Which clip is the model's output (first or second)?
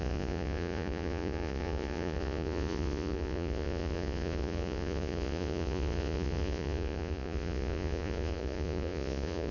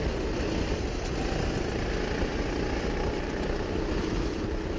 first